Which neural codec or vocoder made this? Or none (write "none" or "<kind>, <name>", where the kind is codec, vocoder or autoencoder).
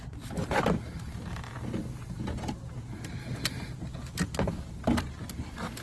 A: none